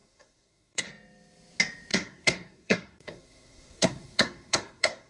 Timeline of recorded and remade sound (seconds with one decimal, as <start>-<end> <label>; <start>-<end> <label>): 0.0-0.9 remade; 0.9-1.9 recorded; 1.9-5.1 remade